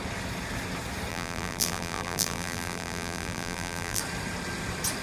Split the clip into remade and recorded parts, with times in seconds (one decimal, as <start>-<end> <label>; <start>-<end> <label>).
0.0-1.1 recorded; 1.1-4.0 remade; 4.0-5.0 recorded